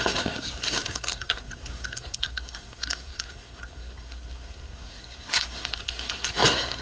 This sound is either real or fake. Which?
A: fake